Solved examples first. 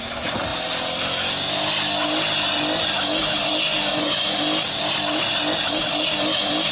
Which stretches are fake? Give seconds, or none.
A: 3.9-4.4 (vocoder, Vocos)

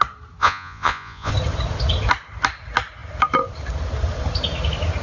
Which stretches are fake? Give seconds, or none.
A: 0.4-1.3 (vocoder, Vocos)